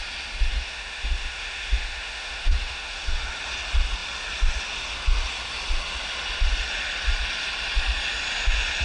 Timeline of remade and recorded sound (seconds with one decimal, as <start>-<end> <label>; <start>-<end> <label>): 0.0-0.5 recorded; 0.5-3.0 remade; 3.0-8.8 recorded